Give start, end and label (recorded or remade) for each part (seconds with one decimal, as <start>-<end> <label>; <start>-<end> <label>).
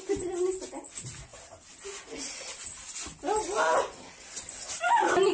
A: 0.0-5.3 recorded